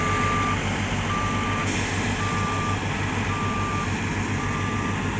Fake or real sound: real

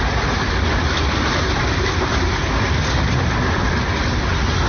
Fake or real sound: real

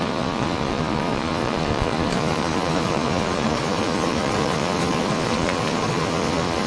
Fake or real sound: fake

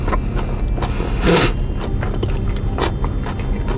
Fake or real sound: real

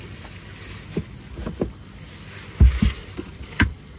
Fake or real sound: real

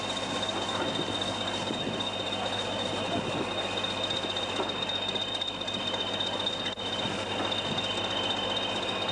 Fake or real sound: real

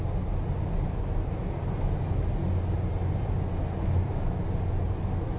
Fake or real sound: real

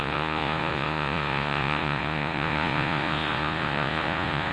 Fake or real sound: fake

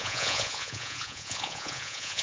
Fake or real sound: fake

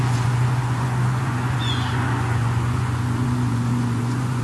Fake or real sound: fake